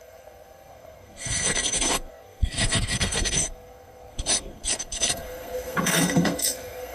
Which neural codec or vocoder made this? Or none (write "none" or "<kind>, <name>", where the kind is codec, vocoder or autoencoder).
codec, SNAC